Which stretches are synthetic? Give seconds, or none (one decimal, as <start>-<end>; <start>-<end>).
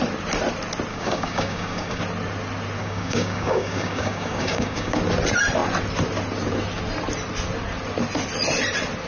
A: 0.9-2.0; 2.8-5.0